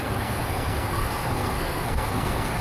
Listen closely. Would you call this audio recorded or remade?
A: remade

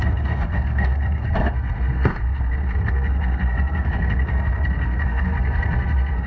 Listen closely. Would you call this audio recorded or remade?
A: remade